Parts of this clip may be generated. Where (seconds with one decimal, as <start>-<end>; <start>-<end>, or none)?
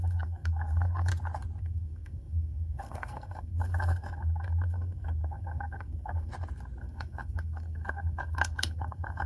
0.0-1.1; 1.6-6.3; 6.8-9.3